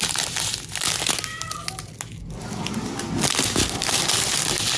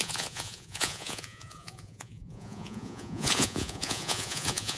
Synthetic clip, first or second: second